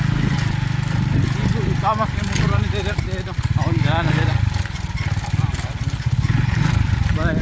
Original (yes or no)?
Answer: yes